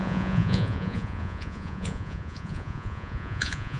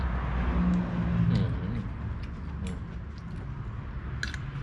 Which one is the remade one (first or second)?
first